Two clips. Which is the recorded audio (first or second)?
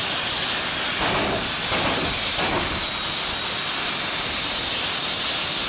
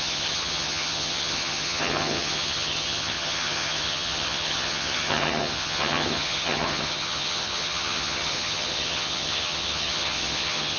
first